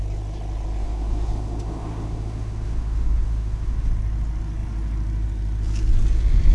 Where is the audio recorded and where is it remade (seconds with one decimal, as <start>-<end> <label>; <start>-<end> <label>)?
0.0-0.8 recorded; 0.8-3.9 remade; 3.9-6.5 recorded